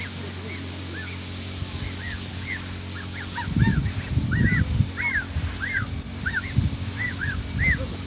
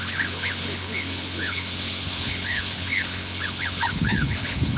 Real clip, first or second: first